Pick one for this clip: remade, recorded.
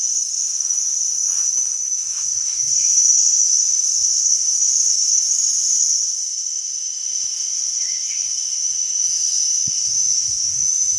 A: remade